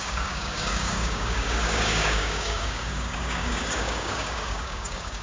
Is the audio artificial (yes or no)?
yes